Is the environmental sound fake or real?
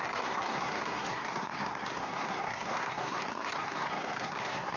fake